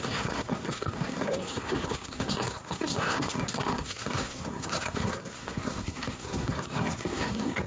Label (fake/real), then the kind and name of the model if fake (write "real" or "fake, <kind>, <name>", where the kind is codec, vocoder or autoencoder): fake, codec, SNAC